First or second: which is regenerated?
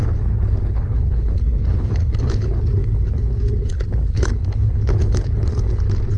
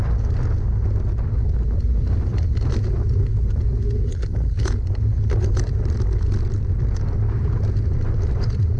first